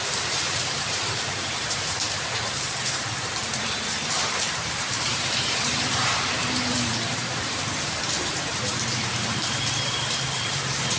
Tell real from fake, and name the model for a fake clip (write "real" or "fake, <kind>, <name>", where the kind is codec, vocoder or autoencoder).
fake, vocoder, BigVGAN v2